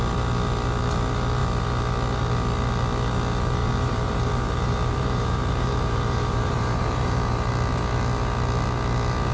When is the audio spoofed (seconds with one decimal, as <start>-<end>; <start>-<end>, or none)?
3.6-7.5